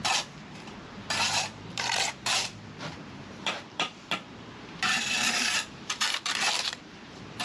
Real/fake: fake